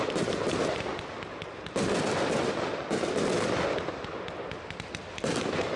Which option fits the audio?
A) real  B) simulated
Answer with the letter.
A